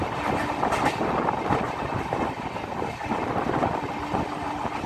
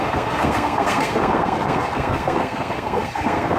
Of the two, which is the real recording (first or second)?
first